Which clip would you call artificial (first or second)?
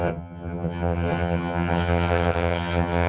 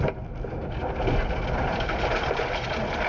first